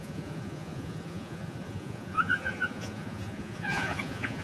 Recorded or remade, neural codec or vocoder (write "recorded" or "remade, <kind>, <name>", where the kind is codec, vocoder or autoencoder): remade, vocoder, Vocos